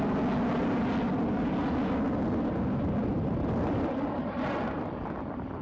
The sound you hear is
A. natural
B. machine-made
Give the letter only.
A